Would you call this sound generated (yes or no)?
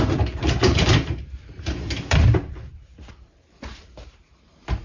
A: yes